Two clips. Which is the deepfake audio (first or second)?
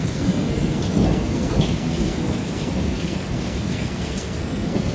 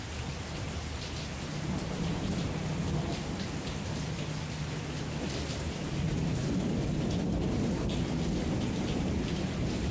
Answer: first